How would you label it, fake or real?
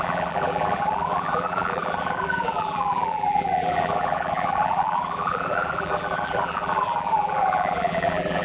fake